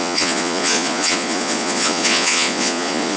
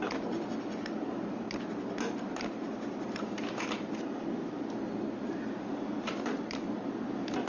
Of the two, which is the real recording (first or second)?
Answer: second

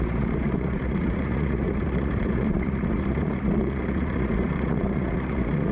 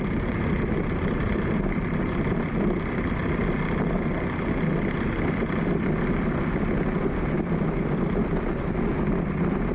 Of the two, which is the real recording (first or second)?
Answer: second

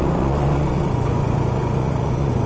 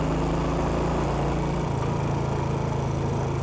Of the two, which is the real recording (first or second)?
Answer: second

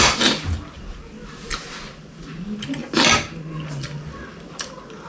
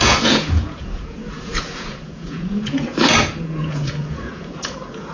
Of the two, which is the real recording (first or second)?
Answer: first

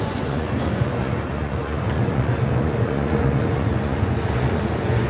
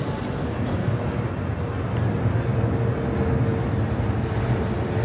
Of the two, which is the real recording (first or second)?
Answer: second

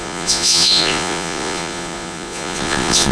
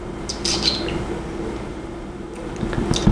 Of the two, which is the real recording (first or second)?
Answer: second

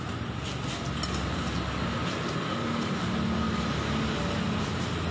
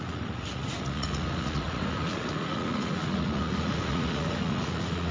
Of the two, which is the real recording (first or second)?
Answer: first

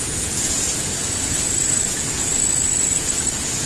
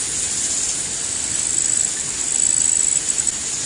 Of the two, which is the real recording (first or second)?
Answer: second